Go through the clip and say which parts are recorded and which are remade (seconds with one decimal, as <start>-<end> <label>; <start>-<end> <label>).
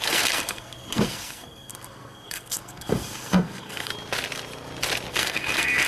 0.0-3.9 remade; 3.9-5.1 recorded; 5.1-5.9 remade